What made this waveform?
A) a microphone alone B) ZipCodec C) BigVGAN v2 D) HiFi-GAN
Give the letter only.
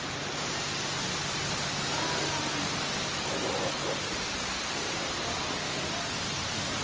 A